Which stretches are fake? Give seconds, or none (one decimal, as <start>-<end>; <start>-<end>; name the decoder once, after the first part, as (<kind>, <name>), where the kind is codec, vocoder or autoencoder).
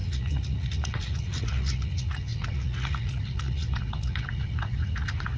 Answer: 0.0-5.4 (vocoder, Vocos)